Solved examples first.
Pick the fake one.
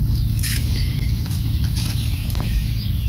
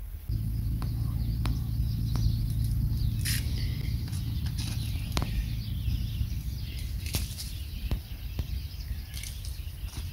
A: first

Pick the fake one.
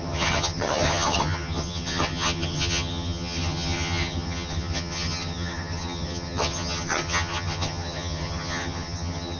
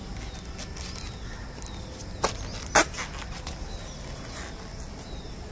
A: first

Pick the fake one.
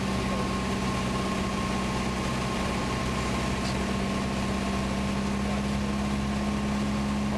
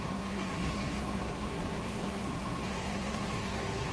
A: second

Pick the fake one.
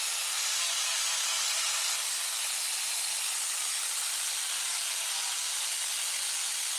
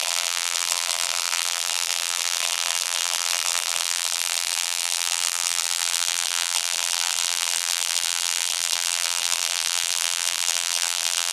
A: second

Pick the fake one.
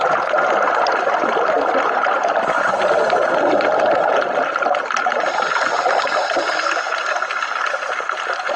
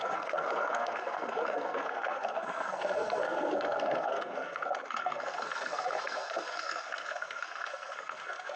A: second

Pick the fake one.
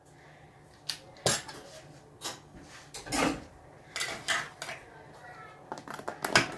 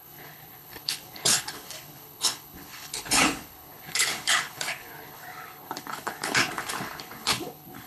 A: second